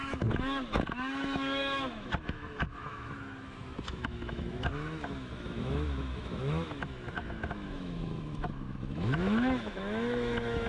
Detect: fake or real fake